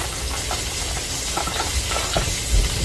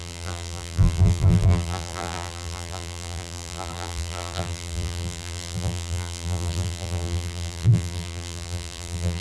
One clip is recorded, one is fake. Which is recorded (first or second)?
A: first